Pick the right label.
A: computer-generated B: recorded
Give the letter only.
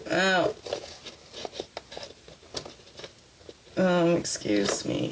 B